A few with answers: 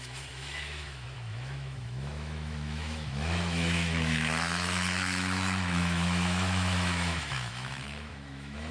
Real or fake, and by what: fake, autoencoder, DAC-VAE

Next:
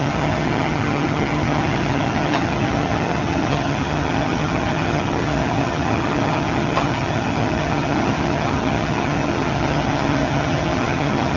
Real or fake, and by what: fake, vocoder, HiFi-GAN